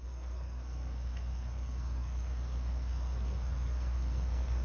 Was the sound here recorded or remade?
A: remade